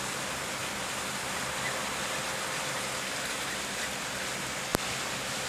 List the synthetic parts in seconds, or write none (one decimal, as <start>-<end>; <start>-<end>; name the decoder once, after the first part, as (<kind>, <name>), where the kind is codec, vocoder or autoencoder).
none

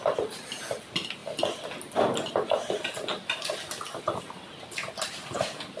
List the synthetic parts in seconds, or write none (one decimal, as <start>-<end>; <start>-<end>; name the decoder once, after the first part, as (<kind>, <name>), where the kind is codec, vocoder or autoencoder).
none

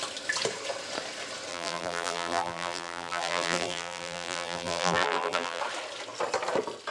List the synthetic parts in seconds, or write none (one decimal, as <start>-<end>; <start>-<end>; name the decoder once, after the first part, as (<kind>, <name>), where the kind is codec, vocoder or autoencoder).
1.5-5.6 (vocoder, BigVGAN v2)

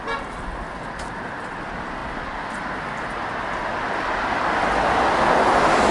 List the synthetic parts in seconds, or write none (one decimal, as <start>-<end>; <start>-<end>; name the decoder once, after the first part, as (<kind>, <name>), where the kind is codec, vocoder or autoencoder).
none

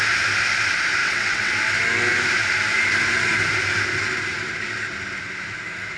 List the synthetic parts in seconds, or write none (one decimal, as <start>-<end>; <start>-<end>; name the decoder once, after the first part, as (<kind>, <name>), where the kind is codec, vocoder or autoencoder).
1.0-1.6 (vocoder, WaveNeXt)